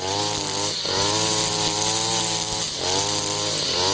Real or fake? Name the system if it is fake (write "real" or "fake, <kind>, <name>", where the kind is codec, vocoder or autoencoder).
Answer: real